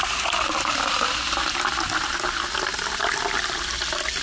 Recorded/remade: recorded